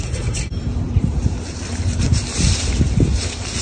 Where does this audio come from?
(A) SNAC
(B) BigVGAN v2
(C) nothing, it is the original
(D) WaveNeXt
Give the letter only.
C